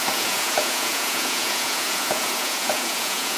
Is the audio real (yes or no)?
no